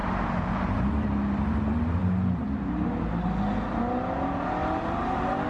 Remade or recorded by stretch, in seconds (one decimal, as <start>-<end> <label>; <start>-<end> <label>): 0.0-0.9 remade; 0.9-2.0 recorded; 2.0-3.1 remade; 3.1-4.6 recorded; 4.6-5.5 remade